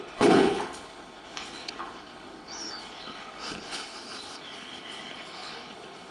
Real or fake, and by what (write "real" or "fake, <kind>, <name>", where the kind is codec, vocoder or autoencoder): fake, codec, HILCodec